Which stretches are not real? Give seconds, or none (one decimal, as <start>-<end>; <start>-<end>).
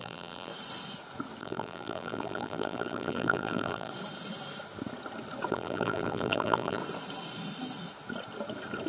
0.0-0.5; 1.4-3.9; 5.5-6.8